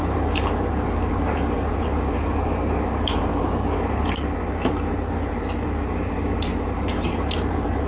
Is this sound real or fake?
real